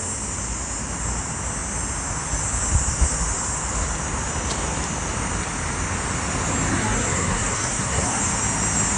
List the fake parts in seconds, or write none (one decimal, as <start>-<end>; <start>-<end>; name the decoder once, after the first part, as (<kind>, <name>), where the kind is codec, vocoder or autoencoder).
6.7-8.2 (codec, SNAC)